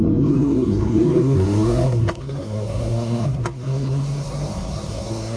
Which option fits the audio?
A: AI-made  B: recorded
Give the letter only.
A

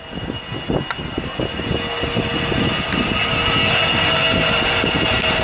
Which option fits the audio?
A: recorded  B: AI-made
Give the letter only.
A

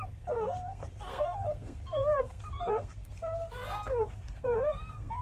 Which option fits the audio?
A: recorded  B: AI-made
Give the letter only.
B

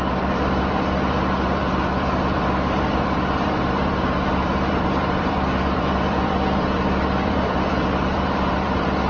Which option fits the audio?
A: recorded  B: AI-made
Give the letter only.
B